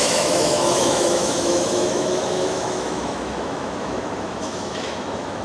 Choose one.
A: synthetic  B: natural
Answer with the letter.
A